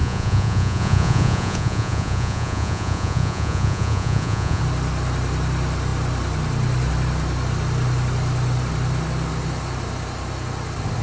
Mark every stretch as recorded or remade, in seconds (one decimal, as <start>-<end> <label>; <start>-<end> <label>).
0.0-4.6 remade; 4.6-11.0 recorded